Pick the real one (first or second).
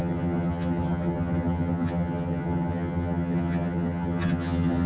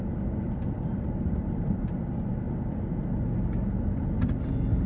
second